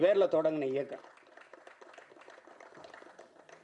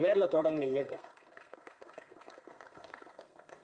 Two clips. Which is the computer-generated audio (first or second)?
second